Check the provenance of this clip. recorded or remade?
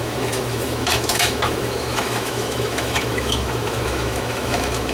remade